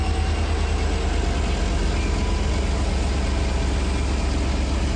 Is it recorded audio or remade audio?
recorded